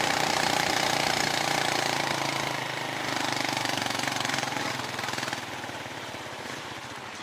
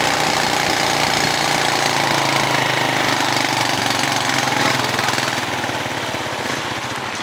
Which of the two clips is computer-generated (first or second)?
first